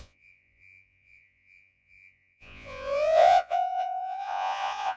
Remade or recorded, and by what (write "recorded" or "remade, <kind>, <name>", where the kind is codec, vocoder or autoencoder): remade, vocoder, Vocos